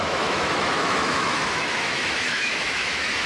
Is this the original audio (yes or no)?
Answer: no